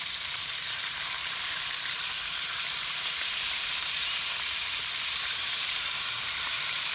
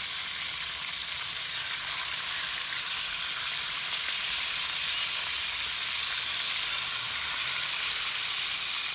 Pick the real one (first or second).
second